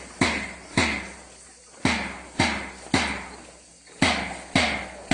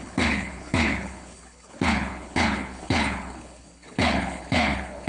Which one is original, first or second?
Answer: first